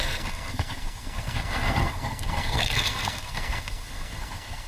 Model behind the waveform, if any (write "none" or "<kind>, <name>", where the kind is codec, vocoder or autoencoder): codec, SNAC